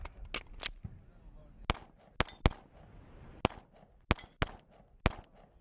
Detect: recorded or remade recorded